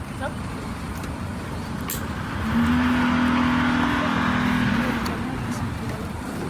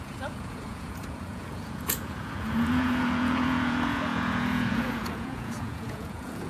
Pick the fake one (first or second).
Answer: second